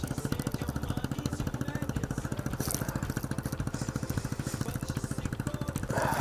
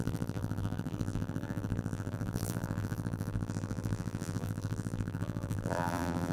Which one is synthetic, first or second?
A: second